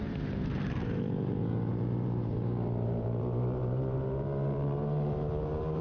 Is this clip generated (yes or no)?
yes